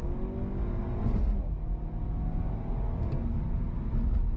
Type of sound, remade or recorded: recorded